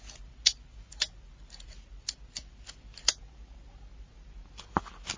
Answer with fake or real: real